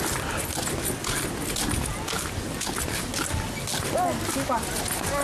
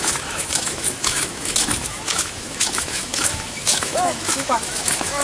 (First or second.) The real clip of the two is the first